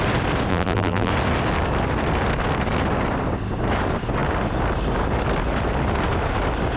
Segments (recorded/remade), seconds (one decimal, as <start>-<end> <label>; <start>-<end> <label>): 0.0-0.5 recorded; 0.5-1.1 remade; 1.1-6.8 recorded